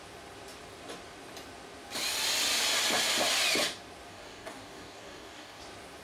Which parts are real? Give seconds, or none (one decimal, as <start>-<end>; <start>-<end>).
0.0-4.1; 5.6-6.0